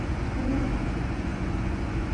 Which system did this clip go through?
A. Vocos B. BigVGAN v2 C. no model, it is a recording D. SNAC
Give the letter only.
A